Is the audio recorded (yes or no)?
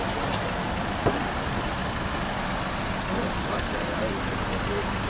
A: yes